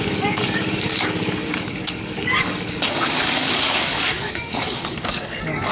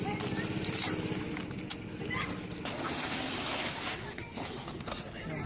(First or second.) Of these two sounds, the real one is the second